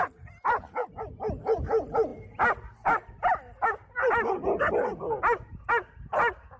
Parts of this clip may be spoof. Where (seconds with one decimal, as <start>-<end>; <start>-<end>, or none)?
none